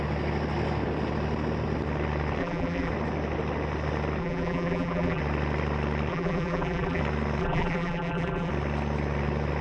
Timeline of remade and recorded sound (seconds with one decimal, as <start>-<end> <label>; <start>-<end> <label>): 0.0-2.4 recorded; 2.4-2.9 remade; 2.9-4.2 recorded; 4.2-5.2 remade; 5.2-6.1 recorded; 6.1-7.0 remade; 7.0-7.4 recorded; 7.4-8.5 remade; 8.5-9.6 recorded